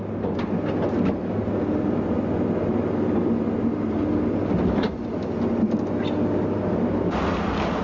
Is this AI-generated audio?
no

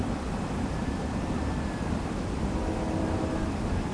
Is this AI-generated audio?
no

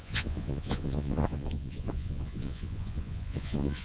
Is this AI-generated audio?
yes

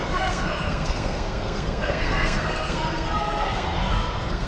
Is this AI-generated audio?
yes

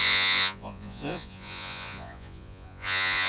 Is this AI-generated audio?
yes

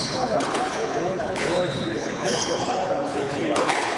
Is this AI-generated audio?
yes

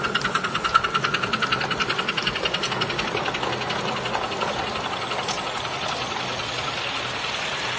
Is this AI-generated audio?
no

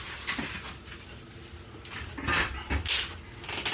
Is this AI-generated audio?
no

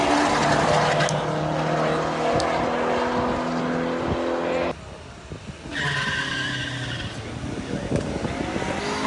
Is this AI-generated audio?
no